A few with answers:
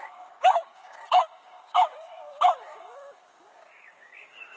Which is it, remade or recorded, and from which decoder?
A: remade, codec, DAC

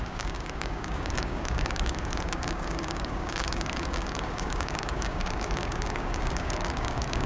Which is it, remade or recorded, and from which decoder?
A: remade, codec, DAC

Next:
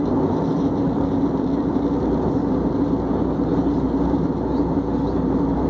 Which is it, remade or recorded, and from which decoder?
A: recorded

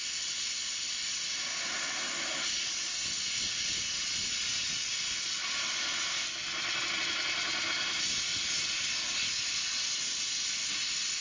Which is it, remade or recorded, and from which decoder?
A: recorded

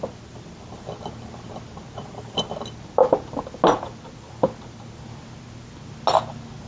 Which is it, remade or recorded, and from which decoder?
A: recorded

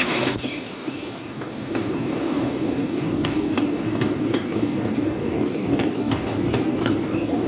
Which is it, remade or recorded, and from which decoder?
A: remade, codec, DAC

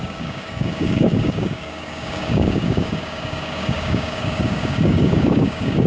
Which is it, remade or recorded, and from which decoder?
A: remade, codec, DAC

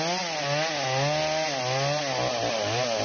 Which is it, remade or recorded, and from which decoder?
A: recorded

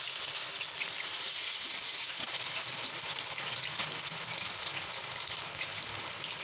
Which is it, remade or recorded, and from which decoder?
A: recorded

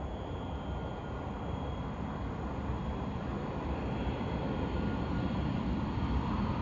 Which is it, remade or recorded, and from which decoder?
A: recorded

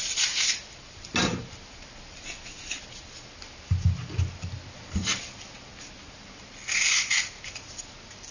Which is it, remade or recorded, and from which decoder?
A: recorded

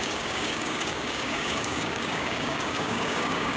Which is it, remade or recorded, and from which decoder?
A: remade, codec, DAC